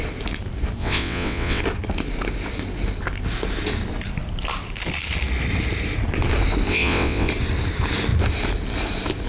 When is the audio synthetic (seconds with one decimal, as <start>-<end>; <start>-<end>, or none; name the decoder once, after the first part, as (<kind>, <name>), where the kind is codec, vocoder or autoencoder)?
0.8-1.6 (vocoder, WaveNeXt); 6.7-7.3